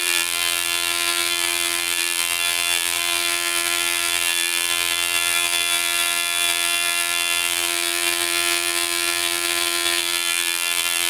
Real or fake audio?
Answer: fake